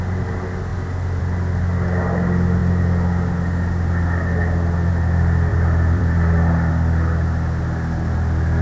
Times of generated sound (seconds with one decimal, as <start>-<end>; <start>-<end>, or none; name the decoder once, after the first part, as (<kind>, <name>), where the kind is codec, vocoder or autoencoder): 5.5-6.7 (vocoder, BigVGAN v2)

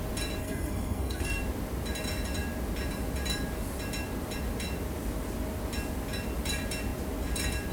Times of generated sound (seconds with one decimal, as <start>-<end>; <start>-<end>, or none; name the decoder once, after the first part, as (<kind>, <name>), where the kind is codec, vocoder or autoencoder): 0.4-1.4 (codec, SNAC)

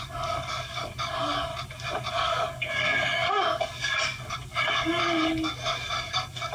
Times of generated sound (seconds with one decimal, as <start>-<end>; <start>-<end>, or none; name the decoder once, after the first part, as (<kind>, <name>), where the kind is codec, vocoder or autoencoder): 0.0-1.5 (codec, DAC); 2.1-6.5

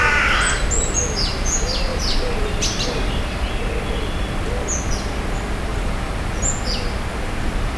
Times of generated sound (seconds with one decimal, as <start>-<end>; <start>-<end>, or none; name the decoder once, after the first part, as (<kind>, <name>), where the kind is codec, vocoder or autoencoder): 1.9-3.2 (vocoder, BigVGAN v2); 5.7-6.3